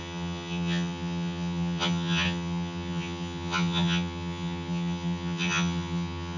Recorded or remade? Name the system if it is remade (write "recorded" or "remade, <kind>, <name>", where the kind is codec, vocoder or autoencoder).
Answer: remade, vocoder, HiFi-GAN